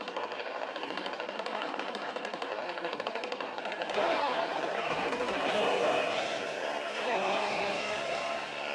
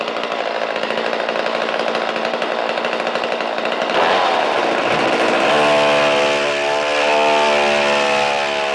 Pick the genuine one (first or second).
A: second